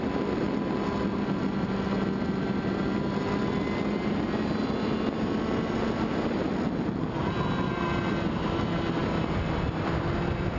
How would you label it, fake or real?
real